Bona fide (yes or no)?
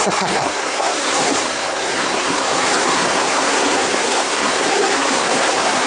no